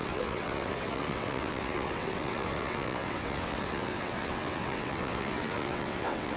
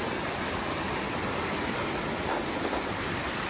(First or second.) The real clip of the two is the second